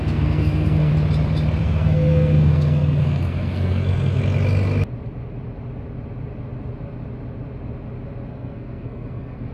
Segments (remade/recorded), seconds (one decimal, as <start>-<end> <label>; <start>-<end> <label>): 0.0-0.9 remade; 0.9-1.6 recorded; 1.6-4.2 remade; 4.2-8.3 recorded; 8.3-9.5 remade